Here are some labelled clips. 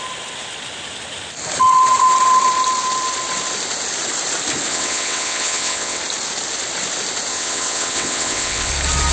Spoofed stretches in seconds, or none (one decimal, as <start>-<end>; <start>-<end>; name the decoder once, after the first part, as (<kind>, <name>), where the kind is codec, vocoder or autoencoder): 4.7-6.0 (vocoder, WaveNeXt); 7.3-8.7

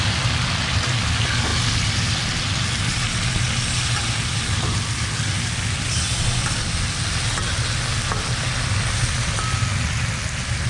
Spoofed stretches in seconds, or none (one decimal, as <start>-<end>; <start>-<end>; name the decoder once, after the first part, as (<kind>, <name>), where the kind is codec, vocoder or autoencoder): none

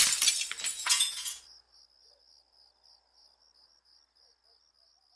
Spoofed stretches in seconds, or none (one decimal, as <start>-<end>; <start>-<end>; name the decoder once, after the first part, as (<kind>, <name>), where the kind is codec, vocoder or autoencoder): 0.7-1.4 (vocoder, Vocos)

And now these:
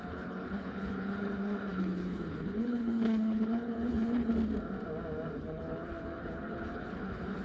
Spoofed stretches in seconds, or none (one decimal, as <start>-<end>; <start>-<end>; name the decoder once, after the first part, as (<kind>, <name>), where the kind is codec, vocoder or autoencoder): 0.0-4.3 (codec, HILCodec); 5.4-7.4

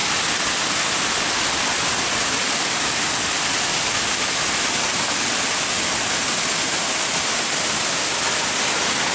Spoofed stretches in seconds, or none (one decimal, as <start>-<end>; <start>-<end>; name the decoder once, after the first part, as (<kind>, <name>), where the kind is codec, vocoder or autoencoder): none

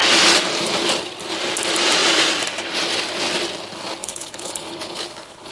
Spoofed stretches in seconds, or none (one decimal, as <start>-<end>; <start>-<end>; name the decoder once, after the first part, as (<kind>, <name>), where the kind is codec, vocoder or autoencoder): 4.0-5.5 (codec, HILCodec)

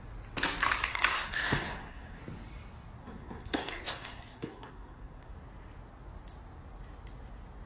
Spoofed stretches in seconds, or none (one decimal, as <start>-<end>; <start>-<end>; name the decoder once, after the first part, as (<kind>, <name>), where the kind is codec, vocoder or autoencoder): 0.9-2.2 (codec, SNAC); 3.0-5.3